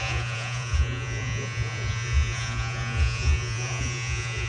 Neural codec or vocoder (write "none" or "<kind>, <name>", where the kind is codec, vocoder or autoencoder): vocoder, Vocos